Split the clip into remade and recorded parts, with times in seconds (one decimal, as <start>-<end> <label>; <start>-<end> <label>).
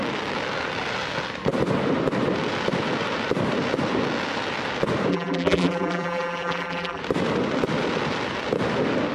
0.0-5.1 recorded; 5.1-7.0 remade; 7.0-9.1 recorded